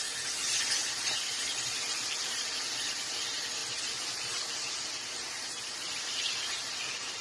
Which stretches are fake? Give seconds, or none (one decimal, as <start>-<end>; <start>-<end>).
0.8-2.5; 3.6-7.2